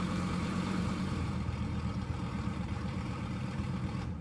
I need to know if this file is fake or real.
fake